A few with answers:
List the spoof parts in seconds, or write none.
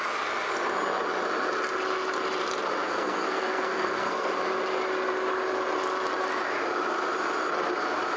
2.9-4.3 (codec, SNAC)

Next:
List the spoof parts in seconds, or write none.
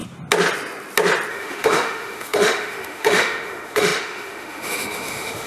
1.3-5.5 (autoencoder, DAC-VAE)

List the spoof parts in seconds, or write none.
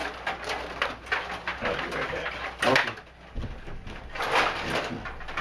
none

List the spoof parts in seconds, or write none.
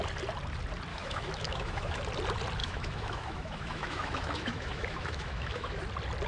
0.9-2.0 (autoencoder, DAC-VAE); 2.6-5.8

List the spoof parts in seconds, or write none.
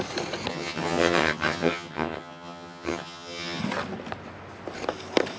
0.5-3.6 (vocoder, HiFi-GAN)